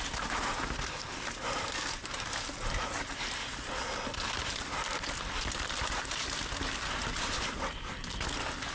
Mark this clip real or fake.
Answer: real